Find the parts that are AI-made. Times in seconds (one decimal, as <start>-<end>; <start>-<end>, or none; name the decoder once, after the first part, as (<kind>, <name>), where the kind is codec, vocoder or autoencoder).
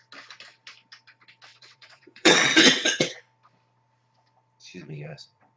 1.5-3.2 (vocoder, WaveNeXt); 4.7-5.6